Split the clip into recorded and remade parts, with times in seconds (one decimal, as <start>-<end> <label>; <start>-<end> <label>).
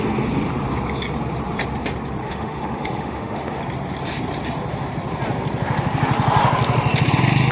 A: 0.0-2.2 recorded; 2.2-3.6 remade; 3.6-7.5 recorded